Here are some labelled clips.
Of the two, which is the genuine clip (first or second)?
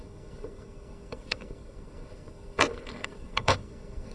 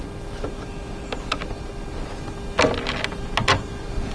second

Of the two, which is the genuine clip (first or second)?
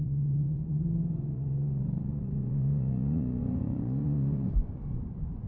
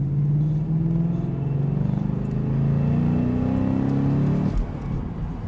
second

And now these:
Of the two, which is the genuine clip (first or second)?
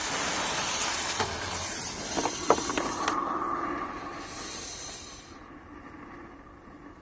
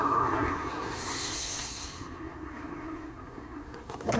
first